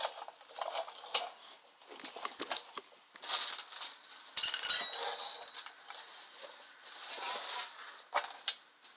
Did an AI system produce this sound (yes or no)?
no